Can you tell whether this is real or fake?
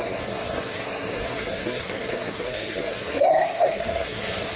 fake